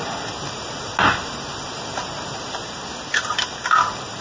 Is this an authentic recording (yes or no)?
yes